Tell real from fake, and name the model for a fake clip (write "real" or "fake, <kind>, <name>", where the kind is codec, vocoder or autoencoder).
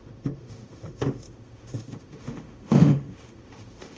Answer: fake, autoencoder, DAC-VAE